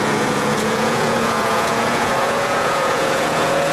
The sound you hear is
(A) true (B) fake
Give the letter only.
B